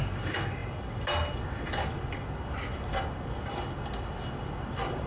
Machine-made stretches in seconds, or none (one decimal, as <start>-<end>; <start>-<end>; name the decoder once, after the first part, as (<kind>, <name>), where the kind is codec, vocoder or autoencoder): none